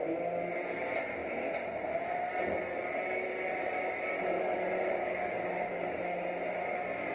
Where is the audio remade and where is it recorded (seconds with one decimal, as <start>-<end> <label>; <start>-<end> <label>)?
0.0-5.0 recorded; 5.0-6.0 remade; 6.0-7.1 recorded